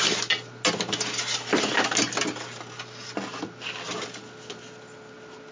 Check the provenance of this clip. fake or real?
real